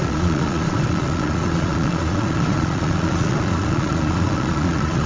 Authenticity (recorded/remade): remade